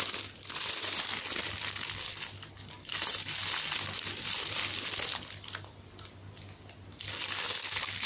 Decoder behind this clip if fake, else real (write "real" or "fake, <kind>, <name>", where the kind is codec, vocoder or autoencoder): real